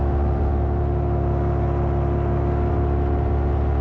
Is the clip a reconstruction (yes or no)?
no